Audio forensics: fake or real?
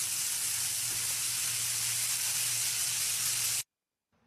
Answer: real